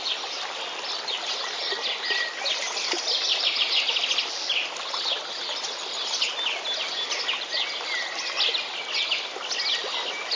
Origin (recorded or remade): recorded